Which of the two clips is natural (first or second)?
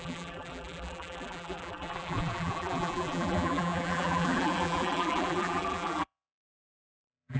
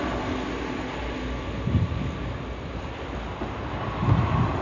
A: second